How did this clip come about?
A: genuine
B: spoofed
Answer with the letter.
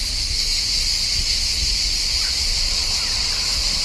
A